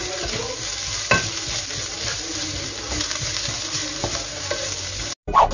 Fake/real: real